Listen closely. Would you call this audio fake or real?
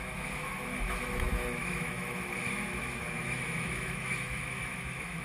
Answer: fake